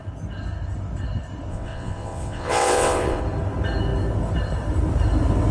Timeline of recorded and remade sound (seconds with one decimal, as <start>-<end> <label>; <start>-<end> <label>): 0.0-1.5 recorded; 1.5-3.2 remade; 3.2-5.5 recorded